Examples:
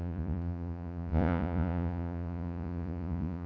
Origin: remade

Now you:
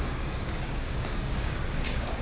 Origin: remade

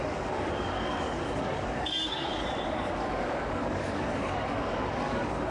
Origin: remade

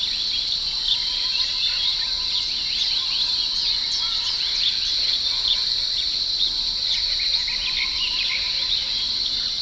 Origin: recorded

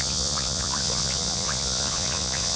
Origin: remade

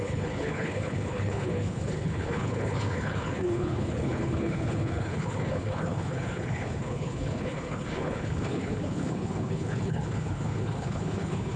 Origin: remade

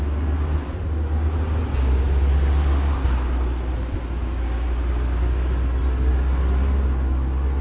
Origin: recorded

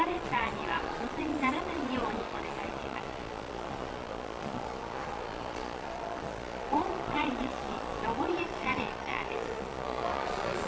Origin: remade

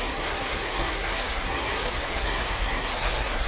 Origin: remade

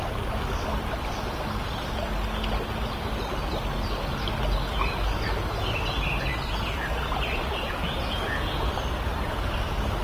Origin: recorded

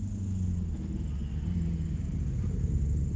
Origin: recorded